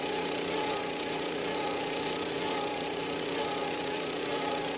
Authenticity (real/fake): fake